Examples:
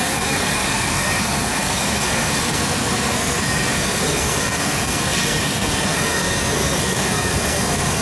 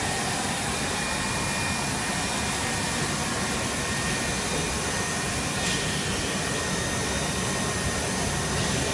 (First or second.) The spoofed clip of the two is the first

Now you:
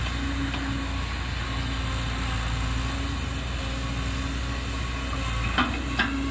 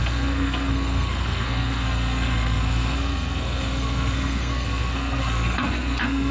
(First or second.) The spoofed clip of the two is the second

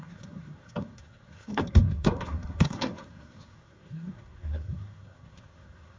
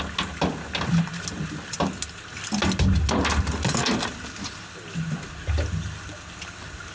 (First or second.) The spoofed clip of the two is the first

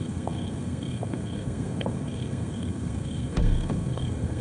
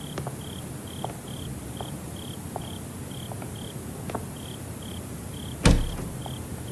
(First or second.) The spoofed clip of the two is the first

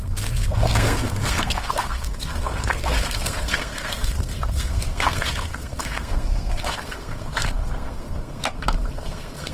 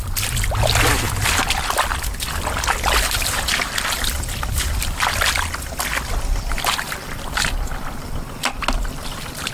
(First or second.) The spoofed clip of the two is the first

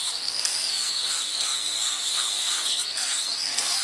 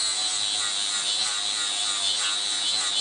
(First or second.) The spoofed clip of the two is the first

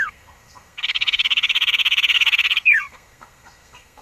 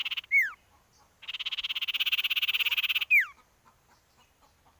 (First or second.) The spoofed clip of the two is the first